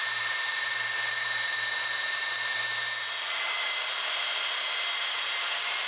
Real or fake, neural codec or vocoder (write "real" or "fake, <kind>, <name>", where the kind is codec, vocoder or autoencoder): real